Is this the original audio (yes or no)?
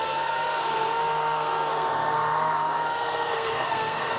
no